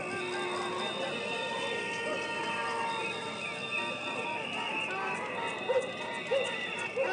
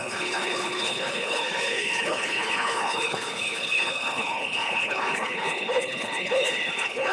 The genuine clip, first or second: first